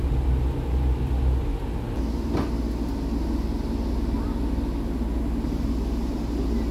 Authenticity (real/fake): real